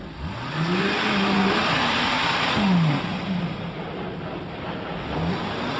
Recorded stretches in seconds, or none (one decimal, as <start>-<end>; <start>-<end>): 0.0-1.6; 2.5-3.1; 4.0-5.8